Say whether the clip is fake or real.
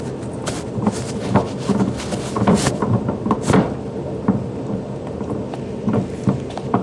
real